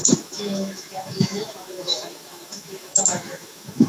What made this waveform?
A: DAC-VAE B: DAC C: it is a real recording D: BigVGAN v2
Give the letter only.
A